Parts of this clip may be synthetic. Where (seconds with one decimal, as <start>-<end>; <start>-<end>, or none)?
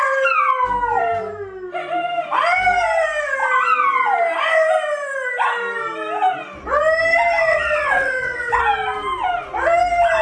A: 7.5-8.6